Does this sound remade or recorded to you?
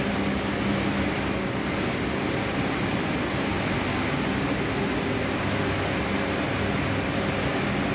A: recorded